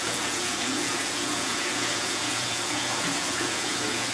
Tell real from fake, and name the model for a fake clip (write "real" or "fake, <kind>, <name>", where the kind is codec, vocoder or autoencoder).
fake, vocoder, Vocos